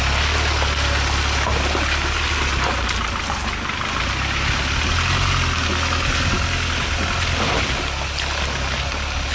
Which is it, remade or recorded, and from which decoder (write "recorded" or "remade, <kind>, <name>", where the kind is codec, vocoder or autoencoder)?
recorded